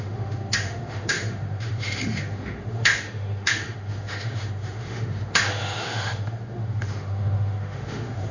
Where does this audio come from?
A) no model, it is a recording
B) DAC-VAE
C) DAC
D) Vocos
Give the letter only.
B